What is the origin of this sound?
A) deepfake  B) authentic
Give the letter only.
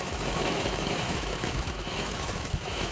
A